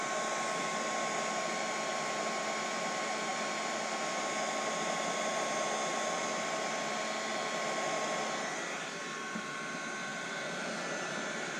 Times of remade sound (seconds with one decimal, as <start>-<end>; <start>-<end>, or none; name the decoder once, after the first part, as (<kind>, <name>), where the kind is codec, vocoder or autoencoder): none